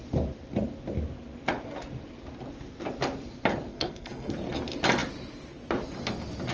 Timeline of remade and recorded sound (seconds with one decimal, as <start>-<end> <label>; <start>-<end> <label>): 0.0-3.7 recorded; 3.7-4.3 remade; 4.3-6.5 recorded

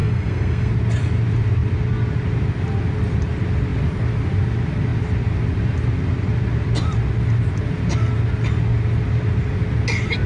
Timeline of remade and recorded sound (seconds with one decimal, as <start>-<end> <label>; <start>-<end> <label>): 0.0-0.7 remade; 0.7-10.3 recorded

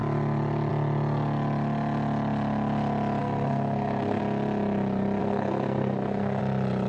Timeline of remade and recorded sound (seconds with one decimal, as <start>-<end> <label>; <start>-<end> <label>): 0.0-3.2 recorded; 3.2-4.2 remade; 4.2-5.2 recorded; 5.2-6.4 remade; 6.4-6.9 recorded

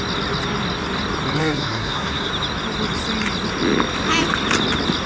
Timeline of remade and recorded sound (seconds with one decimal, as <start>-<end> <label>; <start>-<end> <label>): 0.0-1.4 recorded; 1.4-2.3 remade; 2.3-5.1 recorded

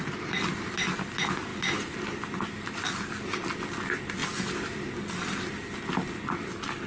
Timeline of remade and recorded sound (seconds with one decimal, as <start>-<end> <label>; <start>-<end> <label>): 0.0-6.9 recorded

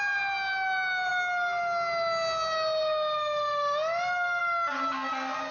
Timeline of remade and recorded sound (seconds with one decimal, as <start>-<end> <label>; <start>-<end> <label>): 0.0-5.5 recorded